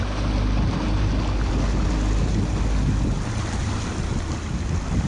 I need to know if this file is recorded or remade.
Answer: recorded